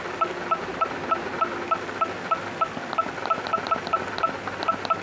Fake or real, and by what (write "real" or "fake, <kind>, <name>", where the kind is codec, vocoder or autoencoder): real